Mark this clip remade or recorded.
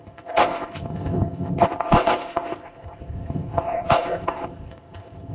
remade